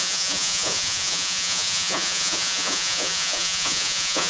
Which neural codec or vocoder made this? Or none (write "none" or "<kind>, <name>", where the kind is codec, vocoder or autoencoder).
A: vocoder, Vocos